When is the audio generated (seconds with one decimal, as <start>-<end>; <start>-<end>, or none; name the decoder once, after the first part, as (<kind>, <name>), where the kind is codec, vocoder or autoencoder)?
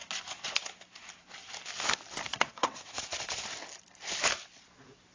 2.3-3.0 (vocoder, WaveNeXt)